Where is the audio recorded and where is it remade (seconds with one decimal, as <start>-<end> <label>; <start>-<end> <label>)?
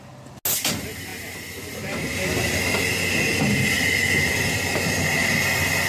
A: 0.0-5.9 recorded